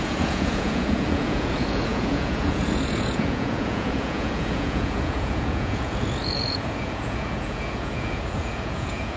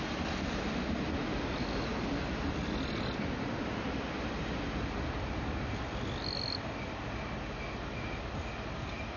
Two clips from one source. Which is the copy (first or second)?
first